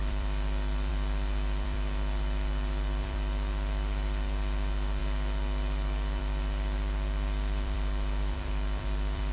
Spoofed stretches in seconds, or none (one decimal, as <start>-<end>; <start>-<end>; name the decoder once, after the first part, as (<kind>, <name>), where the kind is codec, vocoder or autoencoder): 0.0-5.0 (vocoder, BigVGAN v2); 6.2-9.3